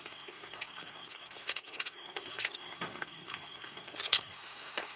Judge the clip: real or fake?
fake